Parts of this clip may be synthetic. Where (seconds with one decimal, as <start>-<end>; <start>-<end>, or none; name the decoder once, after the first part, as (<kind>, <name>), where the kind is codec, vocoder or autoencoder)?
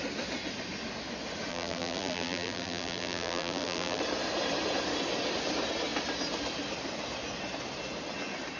1.5-4.0 (vocoder, BigVGAN v2)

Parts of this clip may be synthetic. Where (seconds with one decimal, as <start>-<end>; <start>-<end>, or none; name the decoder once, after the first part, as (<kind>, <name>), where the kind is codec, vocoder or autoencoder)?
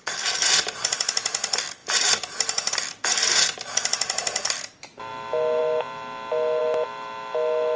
1.8-2.7 (vocoder, BigVGAN v2)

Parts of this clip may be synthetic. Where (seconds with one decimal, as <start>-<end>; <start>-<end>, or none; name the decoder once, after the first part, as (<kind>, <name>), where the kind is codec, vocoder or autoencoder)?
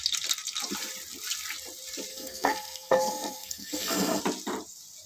2.1-4.2 (codec, SNAC)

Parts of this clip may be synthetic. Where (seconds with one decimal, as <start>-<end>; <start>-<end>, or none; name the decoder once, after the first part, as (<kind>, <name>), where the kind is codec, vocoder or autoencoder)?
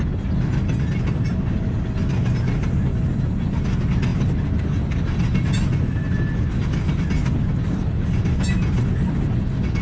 none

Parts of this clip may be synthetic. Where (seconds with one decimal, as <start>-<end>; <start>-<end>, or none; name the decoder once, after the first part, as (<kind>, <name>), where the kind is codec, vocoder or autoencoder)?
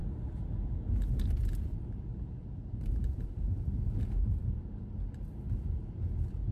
2.1-4.9 (vocoder, BigVGAN v2)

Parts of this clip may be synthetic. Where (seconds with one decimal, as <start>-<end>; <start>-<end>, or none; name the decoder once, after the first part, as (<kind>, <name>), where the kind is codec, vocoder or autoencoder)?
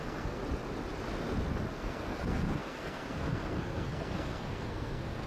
0.0-0.4 (codec, SNAC); 1.7-5.3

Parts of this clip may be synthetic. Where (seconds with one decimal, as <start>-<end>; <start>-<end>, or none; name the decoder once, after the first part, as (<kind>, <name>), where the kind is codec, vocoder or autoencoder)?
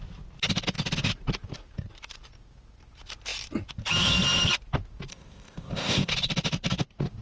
5.1-6.1 (codec, ZipCodec)